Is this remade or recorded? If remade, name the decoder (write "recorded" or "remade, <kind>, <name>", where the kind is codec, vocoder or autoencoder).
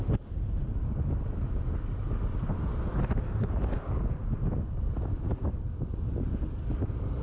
recorded